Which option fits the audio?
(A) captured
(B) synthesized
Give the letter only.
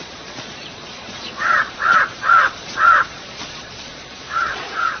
B